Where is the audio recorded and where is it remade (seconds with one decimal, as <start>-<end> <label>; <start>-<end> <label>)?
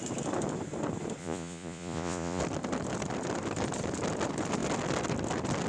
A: 0.0-1.2 recorded; 1.2-2.4 remade; 2.4-5.7 recorded